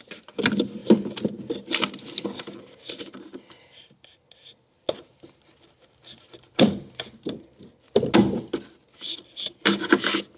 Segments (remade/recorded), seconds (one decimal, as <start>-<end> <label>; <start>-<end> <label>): 0.0-10.4 recorded